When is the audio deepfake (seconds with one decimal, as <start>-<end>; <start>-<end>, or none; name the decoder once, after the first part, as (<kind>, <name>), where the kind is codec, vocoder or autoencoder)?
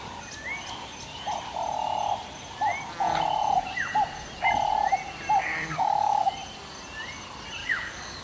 5.4-6.3 (codec, DAC); 7.6-8.2